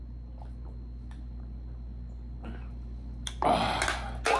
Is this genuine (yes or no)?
yes